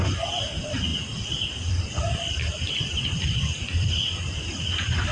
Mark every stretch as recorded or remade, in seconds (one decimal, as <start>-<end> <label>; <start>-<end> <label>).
0.0-5.1 recorded